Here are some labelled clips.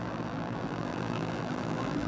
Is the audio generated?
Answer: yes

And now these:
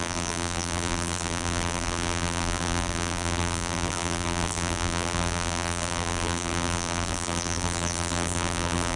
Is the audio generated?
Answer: yes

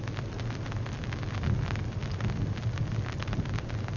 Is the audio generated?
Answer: no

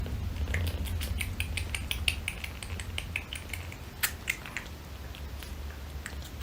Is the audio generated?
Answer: no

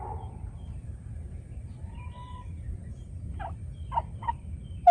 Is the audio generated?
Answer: no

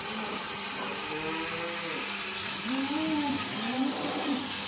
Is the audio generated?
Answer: no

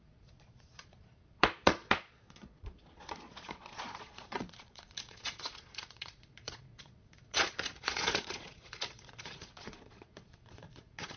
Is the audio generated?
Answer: yes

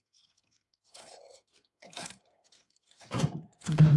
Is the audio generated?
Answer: yes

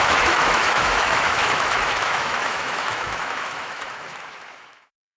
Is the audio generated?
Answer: yes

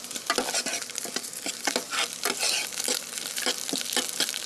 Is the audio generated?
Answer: no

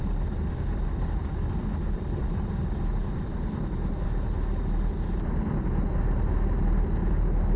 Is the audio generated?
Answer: no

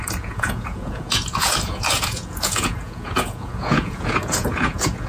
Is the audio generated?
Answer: yes